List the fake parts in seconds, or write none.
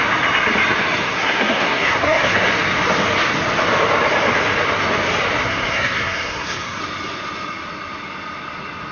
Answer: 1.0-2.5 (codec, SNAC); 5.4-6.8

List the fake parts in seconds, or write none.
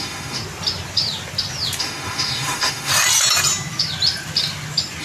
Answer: 0.0-0.4 (autoencoder, DAC-VAE); 1.8-2.9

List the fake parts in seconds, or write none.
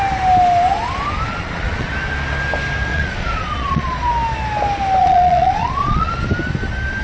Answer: 1.3-1.9 (vocoder, Vocos); 2.9-4.1; 5.0-6.1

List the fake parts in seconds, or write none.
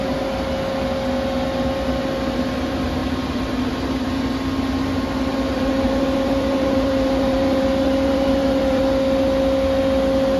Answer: 3.0-3.6 (vocoder, BigVGAN v2); 5.3-8.8